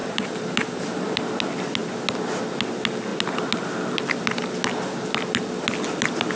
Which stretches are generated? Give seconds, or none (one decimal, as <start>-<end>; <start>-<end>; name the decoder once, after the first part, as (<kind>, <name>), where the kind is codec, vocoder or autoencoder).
0.0-1.2 (vocoder, BigVGAN v2)